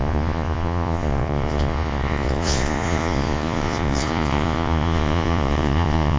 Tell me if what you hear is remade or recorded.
remade